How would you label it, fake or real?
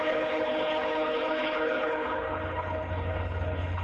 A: fake